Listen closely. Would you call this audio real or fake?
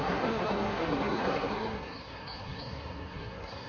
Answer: fake